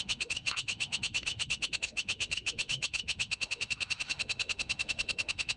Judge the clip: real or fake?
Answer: fake